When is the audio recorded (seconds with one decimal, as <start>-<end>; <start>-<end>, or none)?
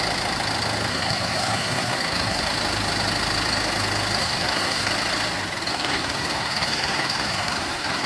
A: 0.0-0.9; 2.4-4.2; 4.9-5.7